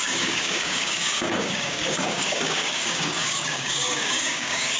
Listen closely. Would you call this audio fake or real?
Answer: fake